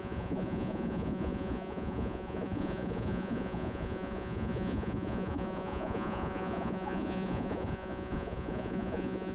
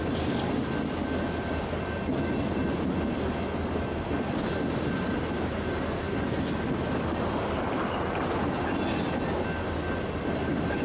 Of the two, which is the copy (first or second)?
first